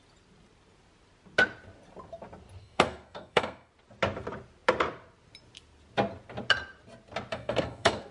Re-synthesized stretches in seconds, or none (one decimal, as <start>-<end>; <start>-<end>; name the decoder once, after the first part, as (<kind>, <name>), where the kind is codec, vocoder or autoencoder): 2.6-3.7 (codec, SNAC); 7.3-8.1